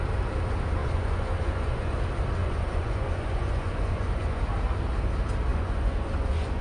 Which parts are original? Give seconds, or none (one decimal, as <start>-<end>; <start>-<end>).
0.0-0.8; 2.0-2.4; 4.4-5.5